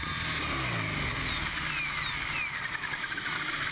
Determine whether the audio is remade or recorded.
recorded